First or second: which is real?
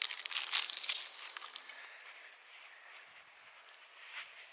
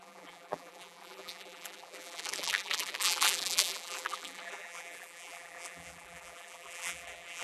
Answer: first